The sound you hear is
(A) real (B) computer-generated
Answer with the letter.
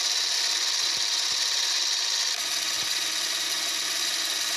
A